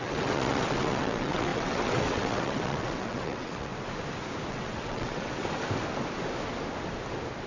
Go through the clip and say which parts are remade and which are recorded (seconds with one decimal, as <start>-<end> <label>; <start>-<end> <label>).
0.0-3.7 remade; 3.7-4.5 recorded; 4.5-5.4 remade; 5.4-7.5 recorded

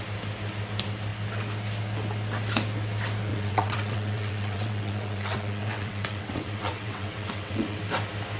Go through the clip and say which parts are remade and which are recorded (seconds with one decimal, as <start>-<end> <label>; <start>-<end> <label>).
0.0-3.3 recorded; 3.3-7.8 remade; 7.8-8.4 recorded